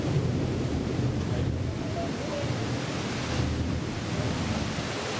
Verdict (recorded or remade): recorded